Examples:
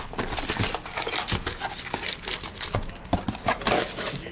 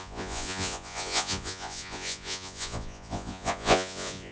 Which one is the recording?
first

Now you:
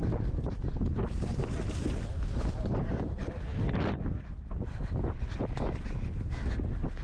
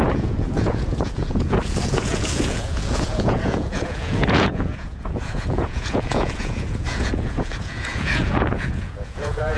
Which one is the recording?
first